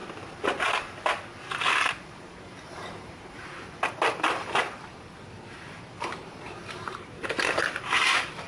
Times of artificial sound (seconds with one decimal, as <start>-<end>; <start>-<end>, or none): 1.9-8.5